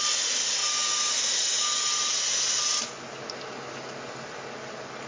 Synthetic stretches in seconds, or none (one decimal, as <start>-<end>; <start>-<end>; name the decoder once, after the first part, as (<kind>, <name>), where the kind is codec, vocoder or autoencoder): none